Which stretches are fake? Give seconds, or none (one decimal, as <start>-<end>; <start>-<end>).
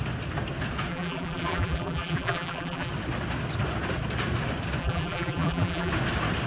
0.9-2.9; 4.8-5.9